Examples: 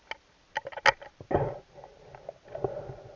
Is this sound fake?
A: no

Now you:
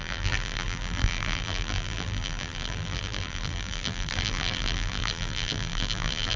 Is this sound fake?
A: yes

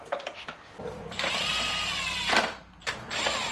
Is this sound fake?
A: yes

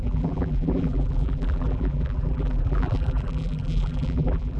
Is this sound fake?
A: yes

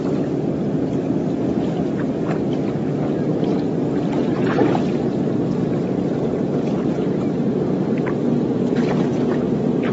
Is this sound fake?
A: no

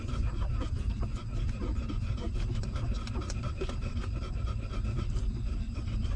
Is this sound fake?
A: yes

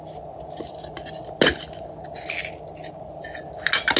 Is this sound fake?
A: no